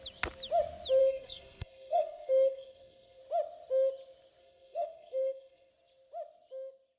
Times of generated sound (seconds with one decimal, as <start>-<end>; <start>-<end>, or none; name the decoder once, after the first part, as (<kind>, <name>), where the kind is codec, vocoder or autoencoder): 1.0-3.2 (codec, SNAC); 4.4-5.7